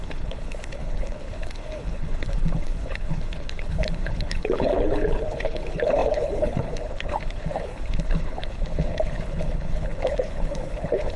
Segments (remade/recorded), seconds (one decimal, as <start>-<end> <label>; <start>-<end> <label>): 0.0-11.2 remade

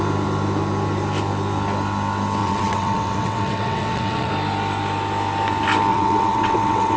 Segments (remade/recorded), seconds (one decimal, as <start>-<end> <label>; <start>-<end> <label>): 0.0-2.4 recorded; 2.4-4.3 remade; 4.3-5.9 recorded; 5.9-7.0 remade